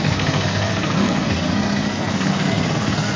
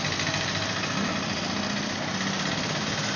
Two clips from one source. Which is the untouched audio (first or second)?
second